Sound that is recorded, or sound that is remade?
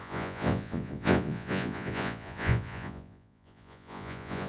remade